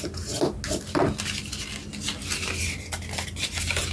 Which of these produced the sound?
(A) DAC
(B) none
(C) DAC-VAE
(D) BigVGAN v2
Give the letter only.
B